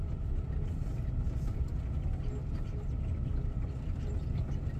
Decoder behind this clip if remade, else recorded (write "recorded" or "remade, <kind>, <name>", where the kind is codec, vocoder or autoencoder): remade, vocoder, BigVGAN v2